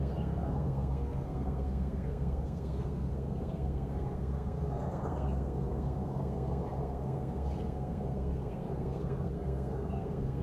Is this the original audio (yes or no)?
no